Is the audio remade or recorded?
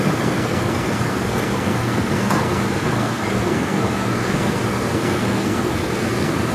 remade